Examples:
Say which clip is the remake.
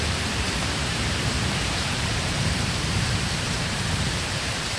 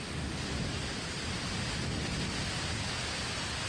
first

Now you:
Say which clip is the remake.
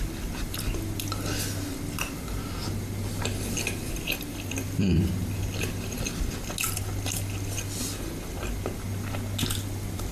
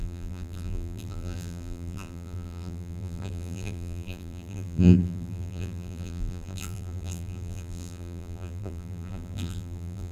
second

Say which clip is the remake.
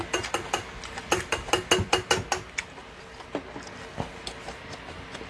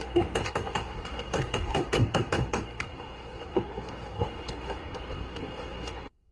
second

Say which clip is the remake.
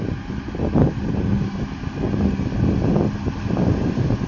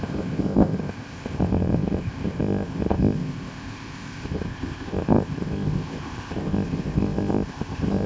second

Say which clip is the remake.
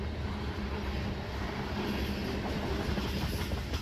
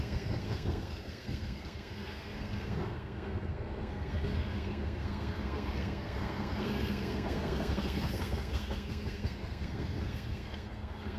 second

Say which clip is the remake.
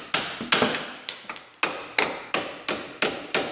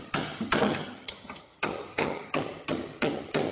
second